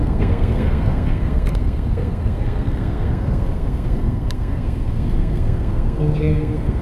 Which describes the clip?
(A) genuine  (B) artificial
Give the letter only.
B